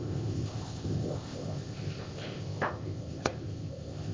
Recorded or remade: remade